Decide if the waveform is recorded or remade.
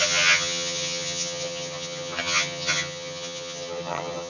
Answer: remade